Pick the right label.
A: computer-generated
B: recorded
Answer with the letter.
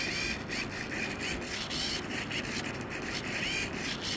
B